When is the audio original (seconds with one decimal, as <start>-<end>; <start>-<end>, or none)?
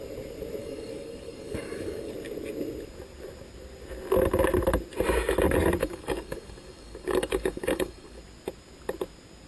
0.0-0.6; 2.1-5.8; 8.2-9.5